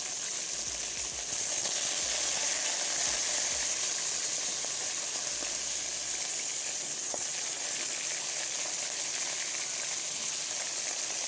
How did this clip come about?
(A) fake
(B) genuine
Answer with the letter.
B